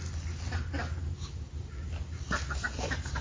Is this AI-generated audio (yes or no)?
no